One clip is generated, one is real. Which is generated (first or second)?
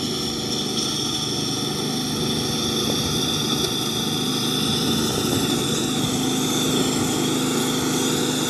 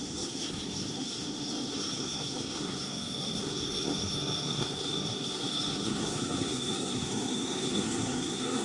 second